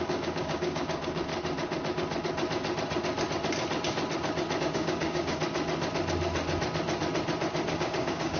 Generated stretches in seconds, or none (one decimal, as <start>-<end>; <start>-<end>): 0.0-1.3; 4.6-5.4; 7.7-8.4